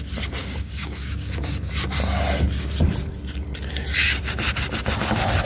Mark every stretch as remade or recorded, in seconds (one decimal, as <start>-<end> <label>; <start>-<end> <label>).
0.0-0.4 recorded; 0.4-1.7 remade; 1.7-5.5 recorded